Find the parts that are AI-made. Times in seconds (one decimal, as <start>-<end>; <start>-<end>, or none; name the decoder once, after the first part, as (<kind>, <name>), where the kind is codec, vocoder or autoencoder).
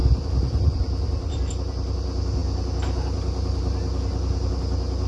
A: 0.0-1.5 (vocoder, BigVGAN v2)